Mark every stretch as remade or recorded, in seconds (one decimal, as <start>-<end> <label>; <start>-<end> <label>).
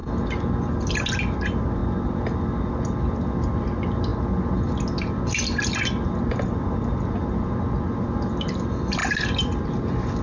0.0-10.2 recorded